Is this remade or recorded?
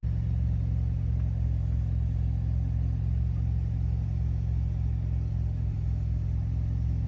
recorded